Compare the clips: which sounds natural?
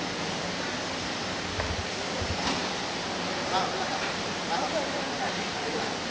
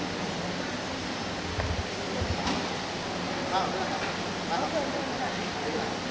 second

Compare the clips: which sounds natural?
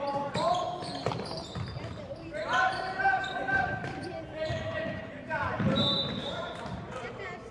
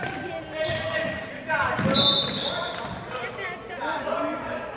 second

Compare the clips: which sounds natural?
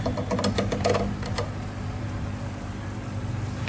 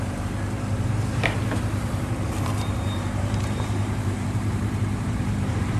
first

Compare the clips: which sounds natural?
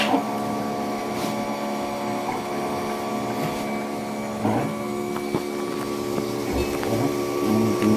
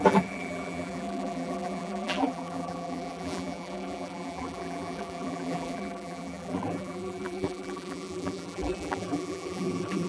first